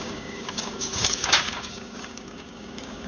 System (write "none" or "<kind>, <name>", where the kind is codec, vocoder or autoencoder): codec, DAC